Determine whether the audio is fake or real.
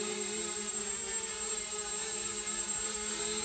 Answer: real